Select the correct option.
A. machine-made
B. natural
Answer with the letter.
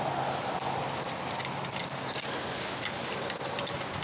B